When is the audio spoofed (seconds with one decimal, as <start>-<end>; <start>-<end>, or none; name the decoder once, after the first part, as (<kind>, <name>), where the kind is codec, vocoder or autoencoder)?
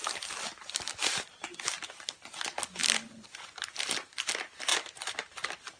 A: none